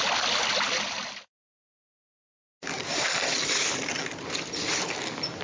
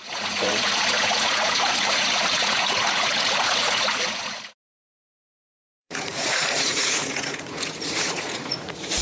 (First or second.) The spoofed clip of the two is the second